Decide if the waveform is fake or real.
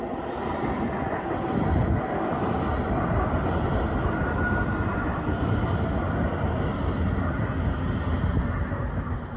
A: real